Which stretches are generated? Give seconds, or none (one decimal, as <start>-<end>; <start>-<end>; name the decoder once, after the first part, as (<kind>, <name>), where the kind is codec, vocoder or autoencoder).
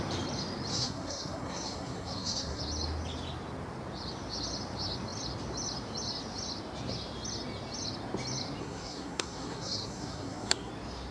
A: 0.7-2.6 (codec, SNAC); 8.6-10.7